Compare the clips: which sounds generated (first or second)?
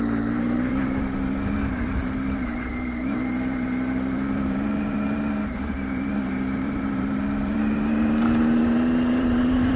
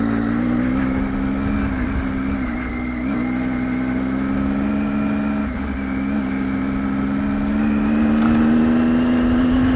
first